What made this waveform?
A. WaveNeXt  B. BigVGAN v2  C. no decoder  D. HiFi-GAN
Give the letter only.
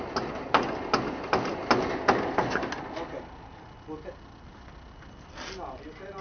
C